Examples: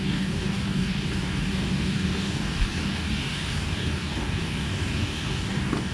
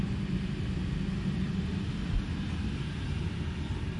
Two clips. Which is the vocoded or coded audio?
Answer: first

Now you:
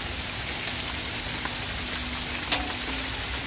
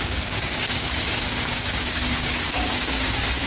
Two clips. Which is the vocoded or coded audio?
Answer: second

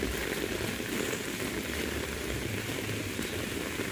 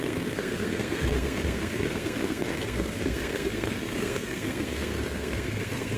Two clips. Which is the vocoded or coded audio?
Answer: second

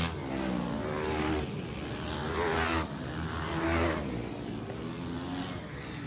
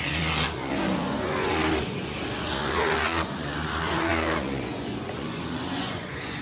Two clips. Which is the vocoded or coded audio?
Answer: second